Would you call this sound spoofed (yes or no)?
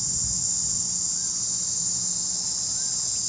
no